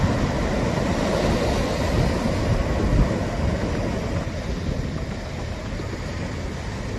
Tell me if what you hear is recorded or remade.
recorded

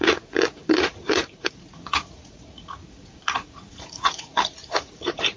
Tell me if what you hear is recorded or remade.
remade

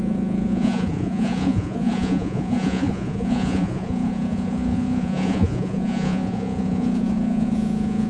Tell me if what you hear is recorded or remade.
remade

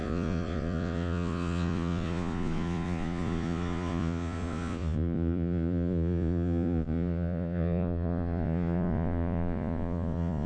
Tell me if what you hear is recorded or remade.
remade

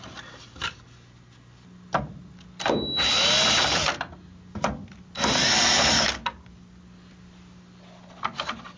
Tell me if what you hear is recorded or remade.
recorded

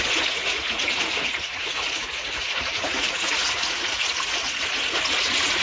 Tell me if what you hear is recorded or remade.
remade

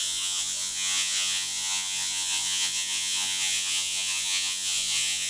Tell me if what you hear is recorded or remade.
remade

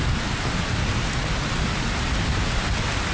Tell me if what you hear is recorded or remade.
recorded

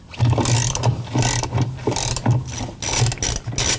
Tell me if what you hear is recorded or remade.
recorded